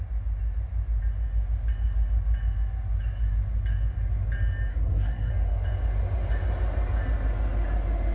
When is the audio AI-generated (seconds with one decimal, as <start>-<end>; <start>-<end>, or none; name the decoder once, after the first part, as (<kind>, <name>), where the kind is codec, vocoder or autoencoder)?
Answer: 4.7-5.3 (codec, SNAC)